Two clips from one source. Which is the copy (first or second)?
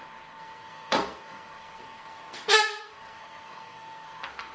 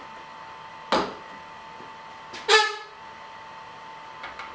first